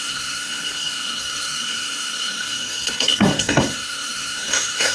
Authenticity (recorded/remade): remade